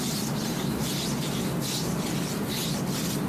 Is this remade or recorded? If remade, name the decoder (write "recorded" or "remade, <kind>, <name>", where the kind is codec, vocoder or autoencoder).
recorded